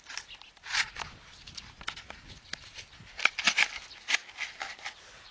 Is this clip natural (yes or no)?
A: yes